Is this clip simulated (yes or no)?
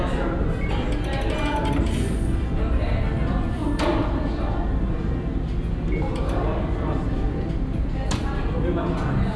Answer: no